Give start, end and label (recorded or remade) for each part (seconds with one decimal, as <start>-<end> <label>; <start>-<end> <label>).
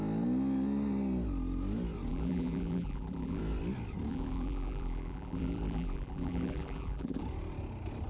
0.0-2.1 recorded; 2.1-3.4 remade; 3.4-4.1 recorded; 4.1-7.2 remade; 7.2-8.1 recorded